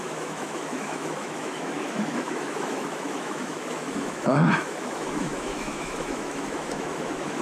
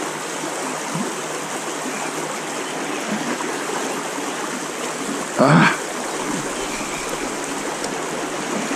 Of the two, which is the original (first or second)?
second